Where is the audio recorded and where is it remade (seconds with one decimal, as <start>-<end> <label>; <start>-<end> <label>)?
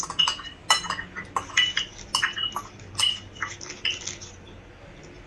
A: 0.0-5.3 recorded